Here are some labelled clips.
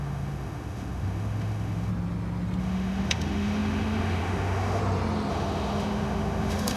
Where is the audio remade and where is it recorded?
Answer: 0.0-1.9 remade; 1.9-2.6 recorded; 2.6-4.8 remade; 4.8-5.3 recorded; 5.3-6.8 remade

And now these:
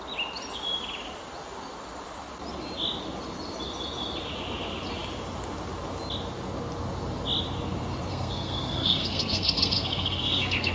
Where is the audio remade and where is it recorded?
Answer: 0.0-8.1 recorded; 8.1-10.7 remade

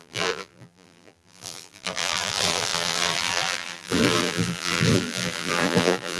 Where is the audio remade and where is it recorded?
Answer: 0.0-6.2 remade